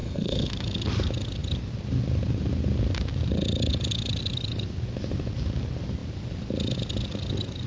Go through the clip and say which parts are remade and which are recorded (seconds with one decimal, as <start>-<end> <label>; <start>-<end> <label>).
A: 0.0-0.5 remade; 0.5-7.7 recorded